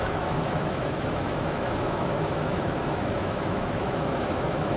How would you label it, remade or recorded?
remade